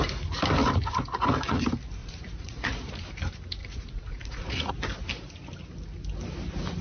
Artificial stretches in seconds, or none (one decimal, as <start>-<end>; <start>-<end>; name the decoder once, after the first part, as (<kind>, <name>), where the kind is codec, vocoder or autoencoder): 0.6-1.6 (vocoder, Vocos); 2.0-2.9; 3.6-4.7